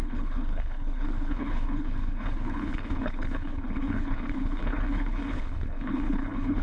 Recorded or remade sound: remade